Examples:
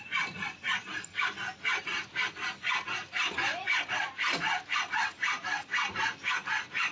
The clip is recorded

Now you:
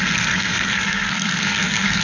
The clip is remade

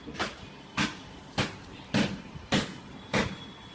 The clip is recorded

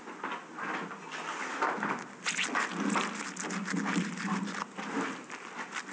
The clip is recorded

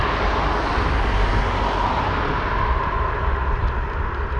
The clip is recorded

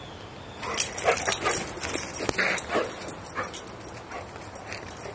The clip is recorded